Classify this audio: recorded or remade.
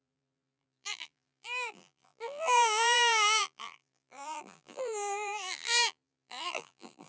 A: remade